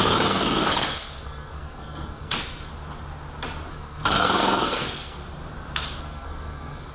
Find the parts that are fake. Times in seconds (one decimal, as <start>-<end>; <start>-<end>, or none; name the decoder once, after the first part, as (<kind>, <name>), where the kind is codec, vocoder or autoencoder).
0.0-2.7 (codec, SNAC); 3.7-5.2; 6.0-6.9

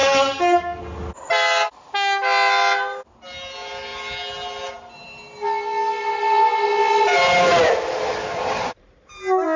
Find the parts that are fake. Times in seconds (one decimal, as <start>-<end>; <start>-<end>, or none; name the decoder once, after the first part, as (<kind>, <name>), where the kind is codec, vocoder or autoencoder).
0.0-0.8 (codec, SNAC)

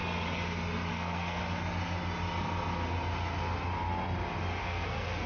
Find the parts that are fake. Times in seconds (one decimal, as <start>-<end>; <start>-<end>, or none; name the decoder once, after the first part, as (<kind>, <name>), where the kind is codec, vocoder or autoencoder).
0.9-1.4 (codec, SNAC); 4.6-5.3

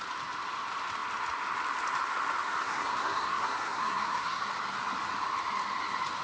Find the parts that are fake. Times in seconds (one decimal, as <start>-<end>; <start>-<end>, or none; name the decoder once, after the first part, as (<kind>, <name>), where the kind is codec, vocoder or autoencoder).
2.6-4.4 (codec, SNAC)

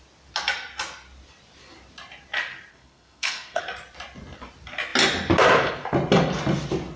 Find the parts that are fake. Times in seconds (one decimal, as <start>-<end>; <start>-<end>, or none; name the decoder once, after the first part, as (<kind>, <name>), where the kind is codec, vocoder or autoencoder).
2.7-3.6 (codec, SNAC)

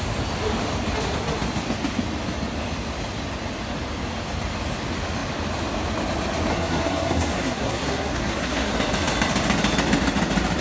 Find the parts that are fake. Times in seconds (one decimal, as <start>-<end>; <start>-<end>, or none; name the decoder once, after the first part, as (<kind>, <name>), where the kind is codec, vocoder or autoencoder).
6.5-8.7 (codec, SNAC)

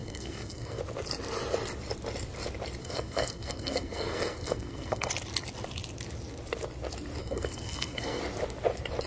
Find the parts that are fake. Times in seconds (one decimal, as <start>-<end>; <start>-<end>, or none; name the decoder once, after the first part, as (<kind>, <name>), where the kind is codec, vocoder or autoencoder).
0.0-0.8 (codec, SNAC); 2.8-5.1; 7.2-8.2